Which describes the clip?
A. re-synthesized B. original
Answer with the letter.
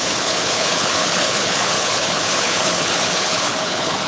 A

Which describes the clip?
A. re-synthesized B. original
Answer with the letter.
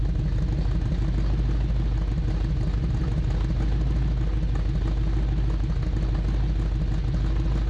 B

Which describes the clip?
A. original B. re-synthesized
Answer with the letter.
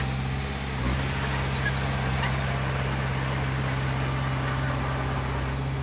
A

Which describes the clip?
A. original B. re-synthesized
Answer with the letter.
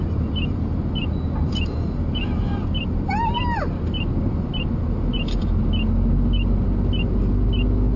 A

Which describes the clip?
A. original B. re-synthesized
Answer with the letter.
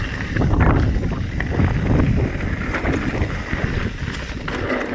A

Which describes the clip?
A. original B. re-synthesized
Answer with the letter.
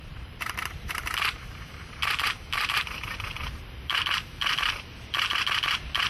B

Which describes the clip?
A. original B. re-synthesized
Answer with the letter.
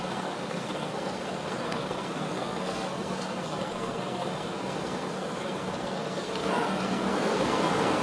B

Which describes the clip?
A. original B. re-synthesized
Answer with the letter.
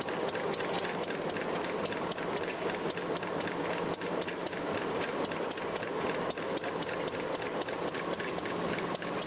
A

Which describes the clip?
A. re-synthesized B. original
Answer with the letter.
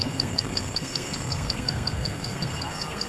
A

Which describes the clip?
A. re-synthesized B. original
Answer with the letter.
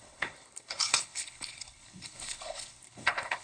A